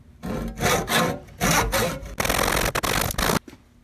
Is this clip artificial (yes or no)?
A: no